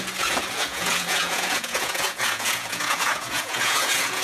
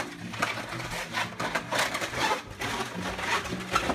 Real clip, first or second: second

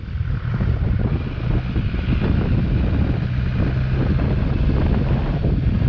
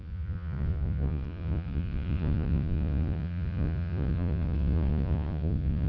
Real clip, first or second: first